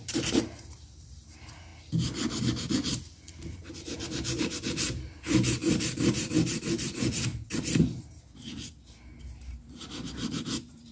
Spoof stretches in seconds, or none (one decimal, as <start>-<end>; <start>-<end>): 0.0-1.7; 2.4-7.3; 9.2-10.9